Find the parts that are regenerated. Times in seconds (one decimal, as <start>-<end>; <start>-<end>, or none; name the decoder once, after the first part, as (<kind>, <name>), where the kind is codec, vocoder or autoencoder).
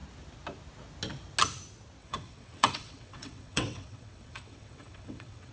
2.0-5.5 (vocoder, WaveNeXt)